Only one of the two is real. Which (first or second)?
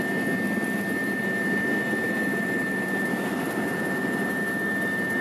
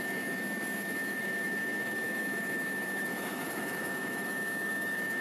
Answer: first